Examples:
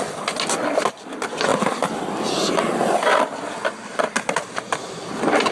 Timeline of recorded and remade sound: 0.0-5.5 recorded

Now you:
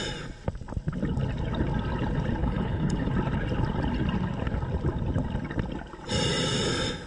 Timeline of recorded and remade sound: 0.0-2.4 recorded; 2.4-3.1 remade; 3.1-7.1 recorded